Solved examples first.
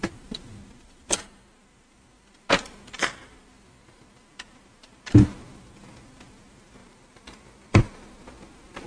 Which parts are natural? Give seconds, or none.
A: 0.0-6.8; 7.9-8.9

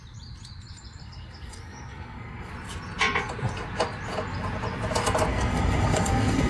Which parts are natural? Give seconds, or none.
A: 0.0-1.0; 2.5-5.3

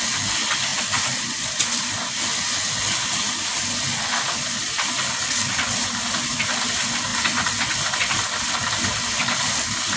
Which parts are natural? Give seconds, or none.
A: 0.0-10.0

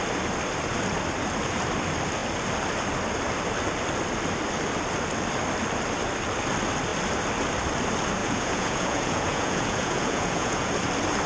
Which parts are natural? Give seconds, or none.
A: 0.0-8.2; 10.7-11.3

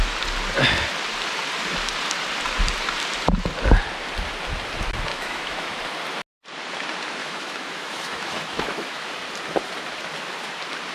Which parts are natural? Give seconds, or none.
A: 0.0-5.1; 5.8-7.2; 9.1-10.9